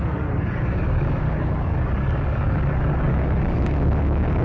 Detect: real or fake fake